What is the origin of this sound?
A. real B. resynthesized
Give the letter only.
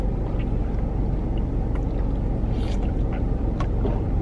A